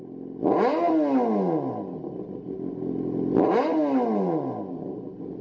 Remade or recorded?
recorded